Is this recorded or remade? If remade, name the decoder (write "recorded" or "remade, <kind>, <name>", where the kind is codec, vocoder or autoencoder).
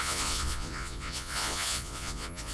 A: remade, vocoder, Vocos